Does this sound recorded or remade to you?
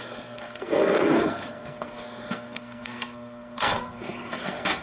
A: remade